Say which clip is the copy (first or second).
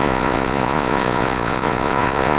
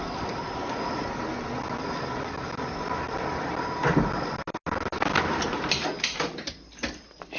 first